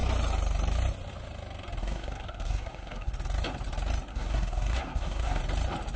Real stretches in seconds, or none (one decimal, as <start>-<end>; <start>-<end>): 0.0-1.8; 3.1-4.1; 5.4-6.0